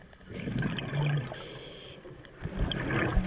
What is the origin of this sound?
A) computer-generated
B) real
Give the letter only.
B